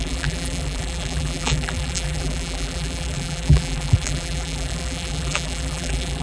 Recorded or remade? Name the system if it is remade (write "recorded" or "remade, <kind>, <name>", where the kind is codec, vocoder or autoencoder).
remade, vocoder, BigVGAN v2